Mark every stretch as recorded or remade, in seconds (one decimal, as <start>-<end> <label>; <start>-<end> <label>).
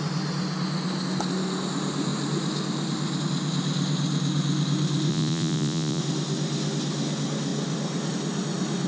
0.0-5.1 recorded; 5.1-6.0 remade; 6.0-8.9 recorded